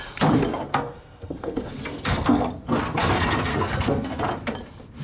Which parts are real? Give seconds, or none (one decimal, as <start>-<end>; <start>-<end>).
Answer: 0.0-0.5; 2.5-3.5; 4.2-5.0